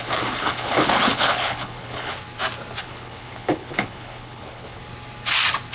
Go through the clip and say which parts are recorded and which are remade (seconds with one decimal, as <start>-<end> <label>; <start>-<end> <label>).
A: 0.0-2.1 remade; 2.1-2.8 recorded; 2.8-4.8 remade; 4.8-5.7 recorded